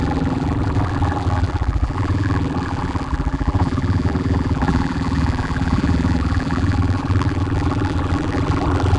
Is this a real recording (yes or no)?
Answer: no